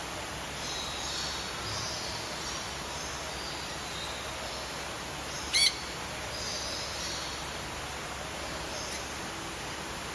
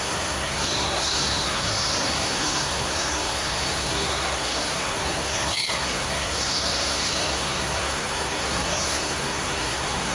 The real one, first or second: first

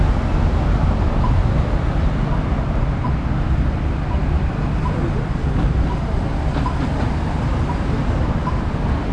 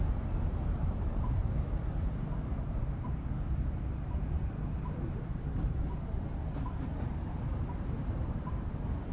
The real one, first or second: first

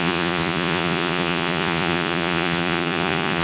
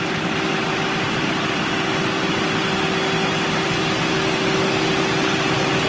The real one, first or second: second